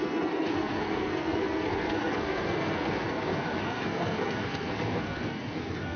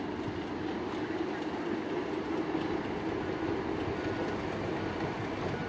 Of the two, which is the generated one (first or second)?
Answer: first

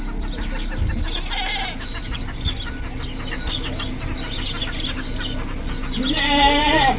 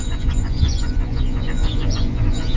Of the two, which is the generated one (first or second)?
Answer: second